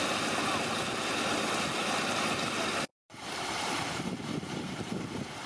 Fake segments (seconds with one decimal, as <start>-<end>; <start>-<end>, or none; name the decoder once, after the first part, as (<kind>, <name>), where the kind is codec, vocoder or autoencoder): 2.9-4.9 (vocoder, BigVGAN v2)

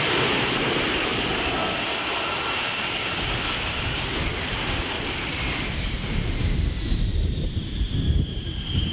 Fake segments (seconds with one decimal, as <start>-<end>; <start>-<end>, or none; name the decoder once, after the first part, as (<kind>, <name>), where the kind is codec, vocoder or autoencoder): 0.0-1.1 (vocoder, BigVGAN v2); 5.4-8.9

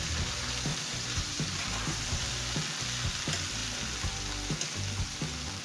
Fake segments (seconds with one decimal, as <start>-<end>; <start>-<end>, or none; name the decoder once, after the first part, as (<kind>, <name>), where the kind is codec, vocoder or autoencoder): 0.7-2.3 (vocoder, BigVGAN v2)

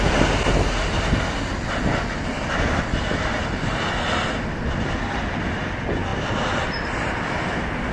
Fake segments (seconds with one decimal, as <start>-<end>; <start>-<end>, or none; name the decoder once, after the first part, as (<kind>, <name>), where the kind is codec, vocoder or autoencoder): none

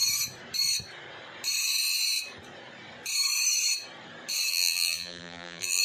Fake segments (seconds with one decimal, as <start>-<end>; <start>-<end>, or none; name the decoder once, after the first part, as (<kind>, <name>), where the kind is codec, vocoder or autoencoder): 4.5-5.8 (vocoder, BigVGAN v2)

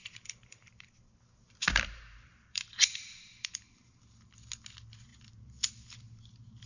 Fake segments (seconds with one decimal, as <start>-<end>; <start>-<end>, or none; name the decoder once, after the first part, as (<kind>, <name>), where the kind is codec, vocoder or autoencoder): 0.0-4.0 (vocoder, BigVGAN v2)

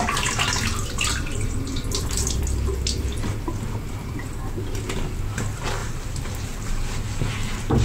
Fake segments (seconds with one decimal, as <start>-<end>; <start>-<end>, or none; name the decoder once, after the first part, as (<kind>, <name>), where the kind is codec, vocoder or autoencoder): 1.1-5.2 (vocoder, BigVGAN v2); 5.8-6.7

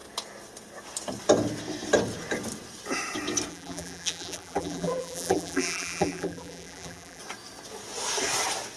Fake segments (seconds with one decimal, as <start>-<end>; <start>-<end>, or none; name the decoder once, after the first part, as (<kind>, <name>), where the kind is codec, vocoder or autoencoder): 3.5-7.2 (vocoder, BigVGAN v2)